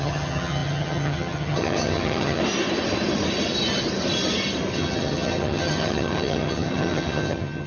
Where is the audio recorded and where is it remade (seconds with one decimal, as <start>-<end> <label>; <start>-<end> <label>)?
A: 0.0-2.4 remade; 2.4-4.7 recorded; 4.7-7.7 remade